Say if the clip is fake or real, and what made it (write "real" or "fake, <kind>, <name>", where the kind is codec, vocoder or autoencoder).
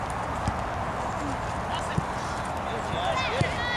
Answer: real